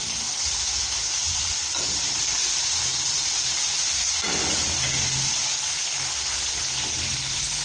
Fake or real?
real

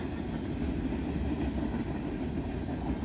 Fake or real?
real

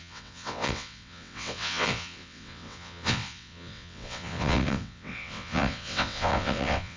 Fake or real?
fake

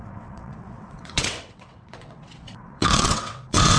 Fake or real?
fake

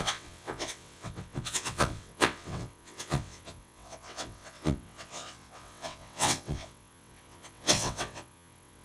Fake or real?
fake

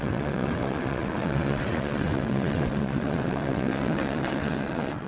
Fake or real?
fake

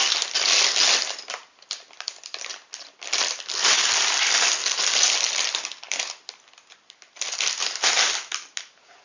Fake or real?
real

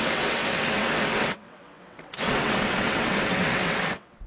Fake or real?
fake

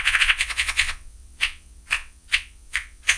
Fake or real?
fake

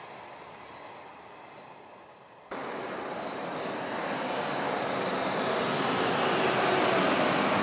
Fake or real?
real